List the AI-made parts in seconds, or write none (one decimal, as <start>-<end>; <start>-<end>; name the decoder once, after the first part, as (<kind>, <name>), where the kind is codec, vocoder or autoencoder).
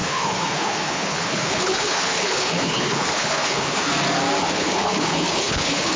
0.0-3.9 (codec, HILCodec); 4.4-6.0